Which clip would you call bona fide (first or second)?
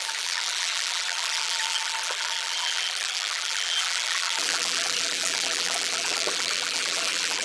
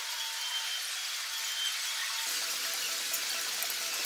second